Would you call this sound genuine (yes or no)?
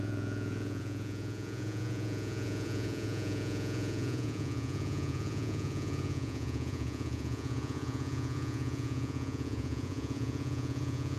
no